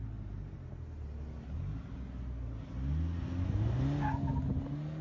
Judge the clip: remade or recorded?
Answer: recorded